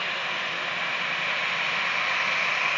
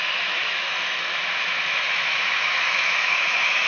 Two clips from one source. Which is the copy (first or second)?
second